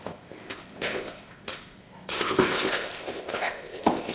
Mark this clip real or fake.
fake